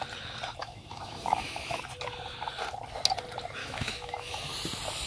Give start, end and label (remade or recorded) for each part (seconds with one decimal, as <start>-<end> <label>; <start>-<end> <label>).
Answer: 0.0-0.6 recorded; 0.6-1.8 remade; 1.8-3.6 recorded; 3.6-4.4 remade; 4.4-5.1 recorded